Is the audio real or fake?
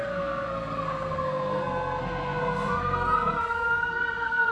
fake